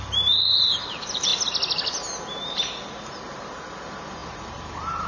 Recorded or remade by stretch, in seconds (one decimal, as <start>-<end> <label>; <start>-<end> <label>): 0.0-1.3 remade; 1.3-2.3 recorded; 2.3-5.1 remade